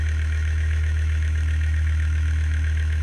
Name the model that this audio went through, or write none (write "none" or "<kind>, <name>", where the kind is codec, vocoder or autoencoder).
autoencoder, DAC-VAE